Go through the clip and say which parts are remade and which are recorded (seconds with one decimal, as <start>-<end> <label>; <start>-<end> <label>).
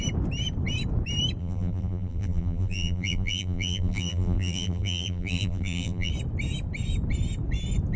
0.0-1.4 recorded; 1.4-6.1 remade; 6.1-8.0 recorded